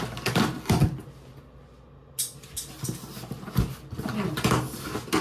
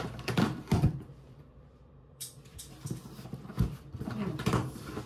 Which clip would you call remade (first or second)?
second